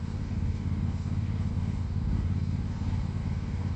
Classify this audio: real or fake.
fake